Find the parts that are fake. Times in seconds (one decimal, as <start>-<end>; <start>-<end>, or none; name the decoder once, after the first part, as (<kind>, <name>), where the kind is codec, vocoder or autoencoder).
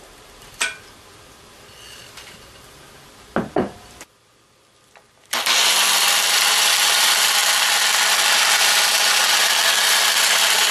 0.0-7.4 (vocoder, BigVGAN v2); 8.2-10.7